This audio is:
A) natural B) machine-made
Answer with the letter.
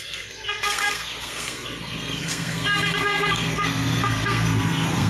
B